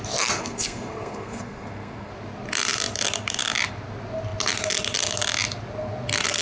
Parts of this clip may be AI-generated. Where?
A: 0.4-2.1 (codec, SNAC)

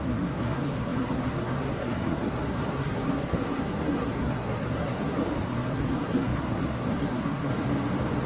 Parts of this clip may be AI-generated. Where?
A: 0.0-7.5 (codec, SNAC)

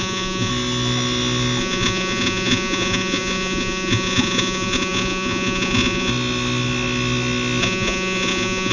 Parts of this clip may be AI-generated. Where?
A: 0.0-0.5 (vocoder, Vocos); 1.6-6.1; 7.6-8.7

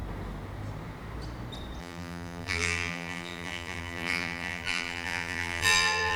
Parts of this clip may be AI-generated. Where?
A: 1.8-6.2 (vocoder, BigVGAN v2)

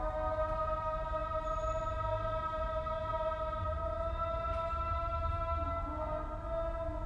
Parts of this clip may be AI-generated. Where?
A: none

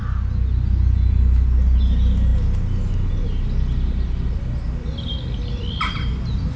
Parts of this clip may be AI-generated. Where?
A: none

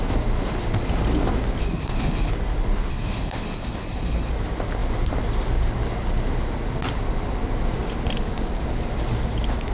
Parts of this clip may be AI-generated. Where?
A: 1.6-2.3 (codec, HILCodec); 2.9-4.3